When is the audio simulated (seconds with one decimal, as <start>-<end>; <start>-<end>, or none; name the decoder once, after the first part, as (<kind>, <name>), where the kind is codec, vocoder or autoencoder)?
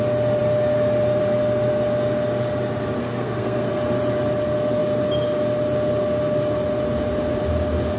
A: 3.0-3.7 (codec, SNAC)